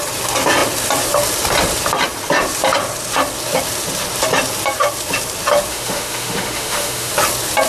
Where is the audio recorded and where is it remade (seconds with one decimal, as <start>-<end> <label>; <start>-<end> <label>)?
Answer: 0.0-5.7 recorded; 5.7-7.1 remade; 7.1-7.7 recorded